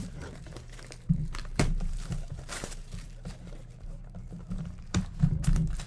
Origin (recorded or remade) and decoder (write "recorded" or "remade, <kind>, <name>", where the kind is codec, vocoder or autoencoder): remade, vocoder, BigVGAN v2